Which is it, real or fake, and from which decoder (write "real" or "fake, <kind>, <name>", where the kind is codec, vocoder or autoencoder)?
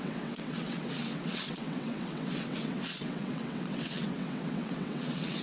fake, vocoder, WaveNeXt